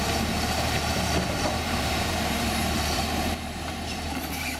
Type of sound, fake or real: fake